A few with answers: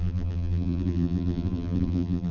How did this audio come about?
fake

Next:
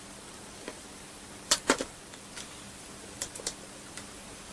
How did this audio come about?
fake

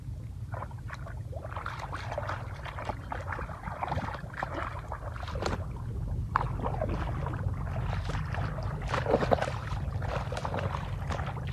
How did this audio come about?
real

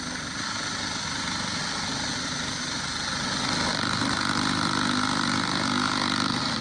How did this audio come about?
real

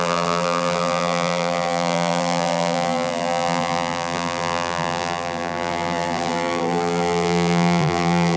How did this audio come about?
fake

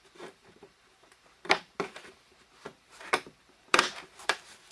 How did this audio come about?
fake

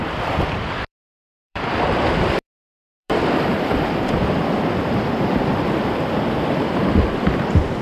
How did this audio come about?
fake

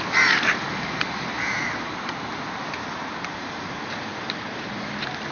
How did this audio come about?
fake